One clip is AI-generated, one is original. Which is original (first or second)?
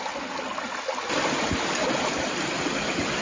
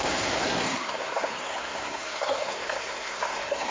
first